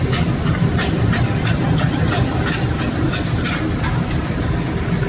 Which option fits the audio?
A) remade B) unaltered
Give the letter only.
B